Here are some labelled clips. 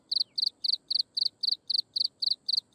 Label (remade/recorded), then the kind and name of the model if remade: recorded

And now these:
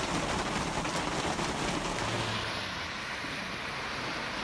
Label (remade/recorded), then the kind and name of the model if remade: recorded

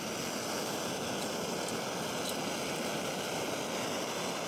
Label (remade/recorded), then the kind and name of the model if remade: recorded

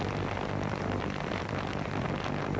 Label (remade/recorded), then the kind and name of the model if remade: recorded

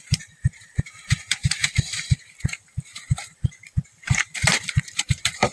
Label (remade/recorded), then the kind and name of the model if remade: remade, vocoder, BigVGAN v2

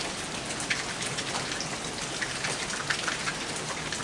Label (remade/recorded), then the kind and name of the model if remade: recorded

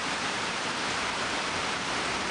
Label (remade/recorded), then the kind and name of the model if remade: remade, vocoder, BigVGAN v2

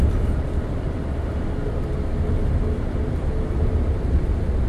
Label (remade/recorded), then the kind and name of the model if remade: recorded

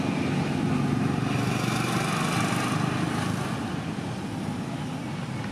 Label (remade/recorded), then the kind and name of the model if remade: recorded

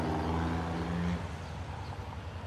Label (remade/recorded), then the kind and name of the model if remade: recorded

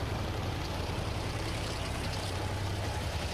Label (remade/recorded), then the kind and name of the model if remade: remade, vocoder, BigVGAN v2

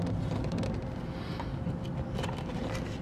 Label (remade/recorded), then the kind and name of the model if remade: recorded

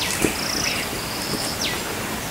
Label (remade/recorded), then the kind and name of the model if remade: recorded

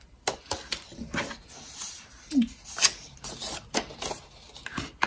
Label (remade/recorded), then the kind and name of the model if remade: recorded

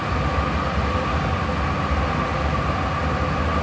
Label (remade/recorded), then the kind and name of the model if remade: recorded